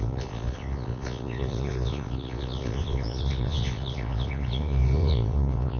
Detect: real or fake fake